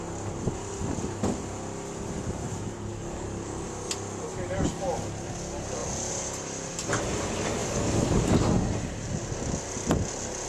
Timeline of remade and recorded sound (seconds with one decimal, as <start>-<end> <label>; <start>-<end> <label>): 0.0-2.9 recorded; 2.9-3.9 remade; 3.9-7.6 recorded; 7.6-8.2 remade; 8.2-10.5 recorded